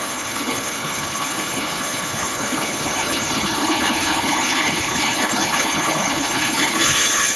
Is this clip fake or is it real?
fake